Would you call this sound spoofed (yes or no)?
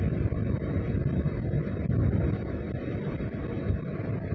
yes